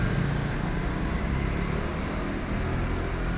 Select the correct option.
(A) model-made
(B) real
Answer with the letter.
B